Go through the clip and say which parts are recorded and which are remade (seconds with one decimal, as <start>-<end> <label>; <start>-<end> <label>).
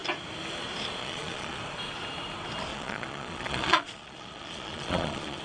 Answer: 0.0-1.0 recorded; 1.0-1.6 remade; 1.6-2.7 recorded; 2.7-5.4 remade